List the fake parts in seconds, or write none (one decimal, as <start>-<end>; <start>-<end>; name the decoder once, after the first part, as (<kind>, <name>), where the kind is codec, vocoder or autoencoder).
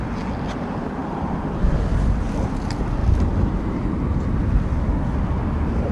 1.0-1.6 (vocoder, BigVGAN v2); 3.0-3.9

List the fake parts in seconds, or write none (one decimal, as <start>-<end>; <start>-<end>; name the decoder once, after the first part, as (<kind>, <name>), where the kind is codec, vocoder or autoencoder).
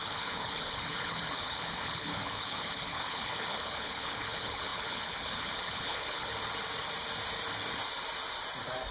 0.0-6.3 (codec, HILCodec)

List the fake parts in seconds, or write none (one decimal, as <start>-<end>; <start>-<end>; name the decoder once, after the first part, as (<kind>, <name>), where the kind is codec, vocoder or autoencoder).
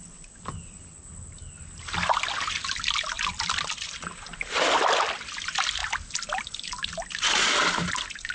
none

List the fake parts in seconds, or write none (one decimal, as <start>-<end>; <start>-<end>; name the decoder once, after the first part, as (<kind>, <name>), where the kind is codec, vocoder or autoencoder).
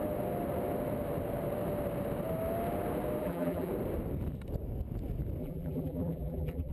3.2-3.7 (vocoder, BigVGAN v2); 5.4-6.7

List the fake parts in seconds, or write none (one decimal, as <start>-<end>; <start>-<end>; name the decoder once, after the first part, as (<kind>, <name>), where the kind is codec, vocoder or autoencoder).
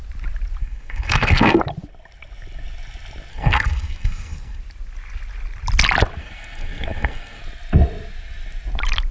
0.6-1.6 (codec, SNAC); 3.3-4.6; 6.2-7.4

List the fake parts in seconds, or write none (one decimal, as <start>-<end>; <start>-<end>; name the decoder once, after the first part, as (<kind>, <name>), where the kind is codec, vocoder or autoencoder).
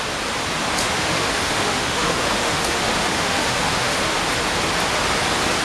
0.8-4.2 (autoencoder, DAC-VAE)